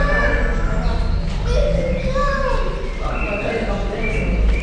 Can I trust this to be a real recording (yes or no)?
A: yes